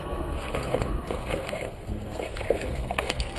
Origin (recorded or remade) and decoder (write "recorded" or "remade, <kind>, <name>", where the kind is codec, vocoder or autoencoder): remade, codec, SNAC